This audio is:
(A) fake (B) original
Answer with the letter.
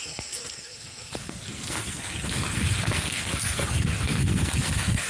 A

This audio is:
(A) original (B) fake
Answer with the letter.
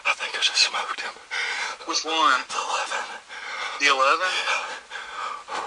A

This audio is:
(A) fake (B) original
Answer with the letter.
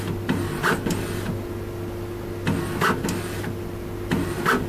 B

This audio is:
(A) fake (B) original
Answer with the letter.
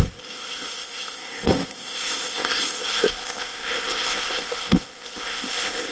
A